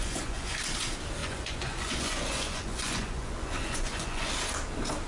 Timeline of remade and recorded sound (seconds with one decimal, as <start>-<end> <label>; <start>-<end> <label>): 0.0-0.6 remade; 0.6-1.2 recorded; 1.2-4.3 remade; 4.3-5.1 recorded